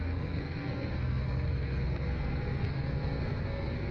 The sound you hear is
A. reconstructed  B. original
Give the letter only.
A